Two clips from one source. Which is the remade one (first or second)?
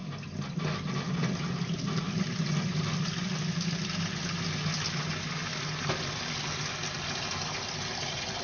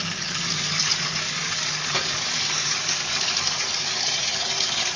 second